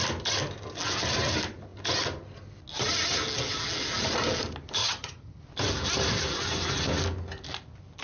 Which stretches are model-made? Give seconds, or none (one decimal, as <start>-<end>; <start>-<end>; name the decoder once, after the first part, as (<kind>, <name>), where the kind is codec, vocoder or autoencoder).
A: 4.8-5.4 (vocoder, HiFi-GAN)